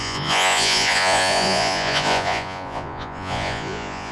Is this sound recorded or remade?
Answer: remade